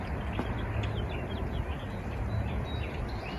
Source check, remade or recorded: recorded